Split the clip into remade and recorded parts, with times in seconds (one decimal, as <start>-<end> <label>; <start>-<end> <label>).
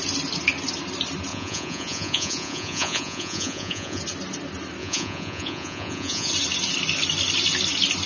0.0-1.3 recorded; 1.3-4.0 remade; 4.0-4.8 recorded; 4.8-6.3 remade; 6.3-8.1 recorded